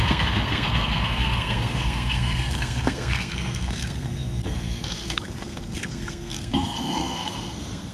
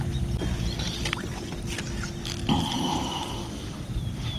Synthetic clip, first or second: first